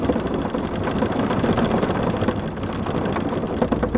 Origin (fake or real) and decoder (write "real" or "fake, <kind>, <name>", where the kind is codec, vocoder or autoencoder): real